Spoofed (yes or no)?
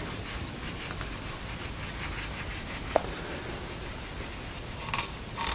no